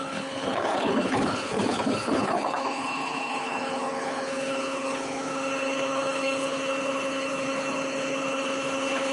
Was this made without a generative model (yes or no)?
no